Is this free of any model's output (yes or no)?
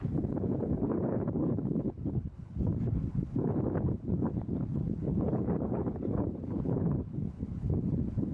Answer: no